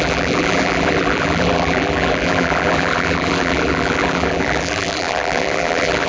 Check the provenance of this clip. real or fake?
fake